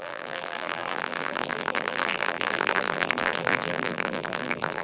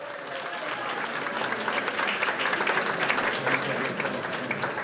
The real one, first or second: second